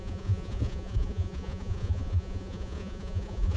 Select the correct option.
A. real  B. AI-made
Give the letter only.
B